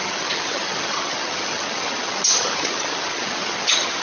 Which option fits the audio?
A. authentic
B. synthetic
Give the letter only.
B